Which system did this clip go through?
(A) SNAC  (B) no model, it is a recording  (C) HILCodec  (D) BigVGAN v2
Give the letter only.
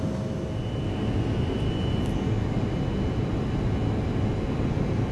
B